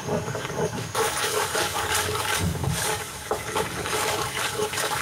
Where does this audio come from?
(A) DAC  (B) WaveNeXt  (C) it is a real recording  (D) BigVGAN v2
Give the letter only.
A